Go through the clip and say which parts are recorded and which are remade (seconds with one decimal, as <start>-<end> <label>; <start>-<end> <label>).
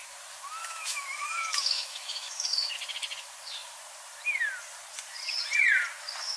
0.0-0.6 recorded; 0.6-2.7 remade; 2.7-6.4 recorded